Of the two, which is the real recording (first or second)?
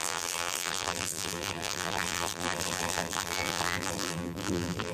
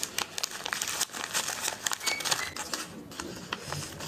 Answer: second